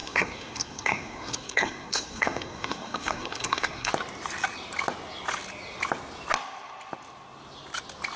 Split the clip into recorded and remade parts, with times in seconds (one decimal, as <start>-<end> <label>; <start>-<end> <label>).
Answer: 0.0-3.9 remade; 3.9-8.2 recorded